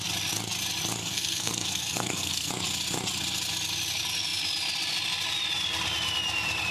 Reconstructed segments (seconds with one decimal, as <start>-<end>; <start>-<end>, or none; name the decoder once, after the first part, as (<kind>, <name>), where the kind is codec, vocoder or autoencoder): 1.0-2.5 (codec, SNAC)